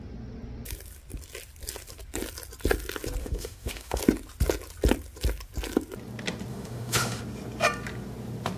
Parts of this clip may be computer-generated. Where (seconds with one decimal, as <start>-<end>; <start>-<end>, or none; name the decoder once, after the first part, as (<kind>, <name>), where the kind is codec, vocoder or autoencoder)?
3.2-4.0 (autoencoder, DAC-VAE); 6.5-7.2